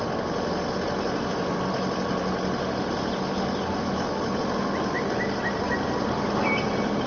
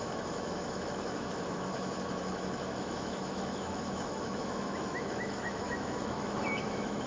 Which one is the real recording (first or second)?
first